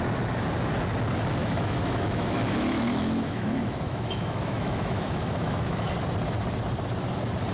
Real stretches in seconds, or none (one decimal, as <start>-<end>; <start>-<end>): 0.0-1.4; 5.9-7.5